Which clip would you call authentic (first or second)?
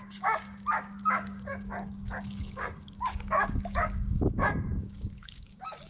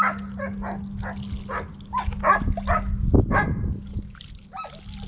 second